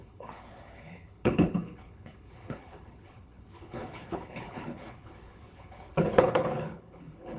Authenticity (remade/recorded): remade